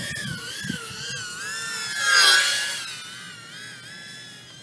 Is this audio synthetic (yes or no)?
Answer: no